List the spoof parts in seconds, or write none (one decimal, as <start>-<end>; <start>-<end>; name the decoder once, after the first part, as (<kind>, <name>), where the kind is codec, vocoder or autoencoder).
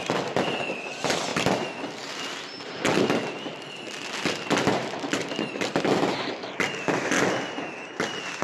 0.0-1.3 (vocoder, BigVGAN v2); 2.9-8.4